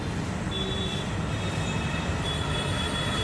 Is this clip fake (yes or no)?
no